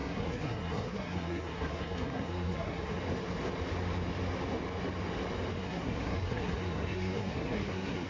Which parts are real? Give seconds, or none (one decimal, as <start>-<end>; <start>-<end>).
3.0-5.6